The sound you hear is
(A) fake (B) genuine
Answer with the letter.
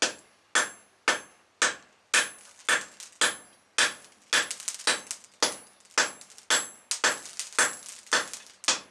B